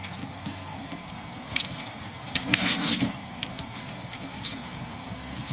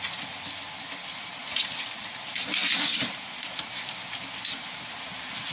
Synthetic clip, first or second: first